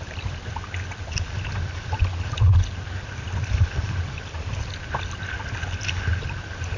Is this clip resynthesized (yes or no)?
no